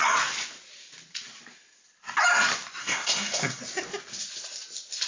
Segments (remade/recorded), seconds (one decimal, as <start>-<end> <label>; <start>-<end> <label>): 0.0-2.8 recorded; 2.8-3.6 remade; 3.6-5.1 recorded

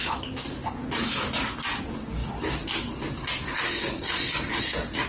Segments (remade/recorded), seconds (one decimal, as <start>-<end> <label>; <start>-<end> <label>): 0.0-5.1 recorded

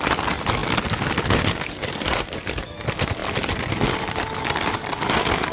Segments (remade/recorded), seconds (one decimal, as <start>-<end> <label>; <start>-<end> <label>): 0.0-5.5 recorded

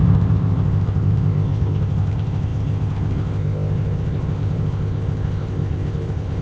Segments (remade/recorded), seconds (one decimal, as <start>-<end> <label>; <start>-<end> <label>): 0.0-6.4 remade

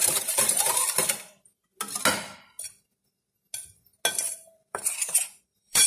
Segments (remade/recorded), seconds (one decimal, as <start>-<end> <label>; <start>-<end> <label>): 0.0-0.8 remade; 0.8-4.3 recorded; 4.3-5.9 remade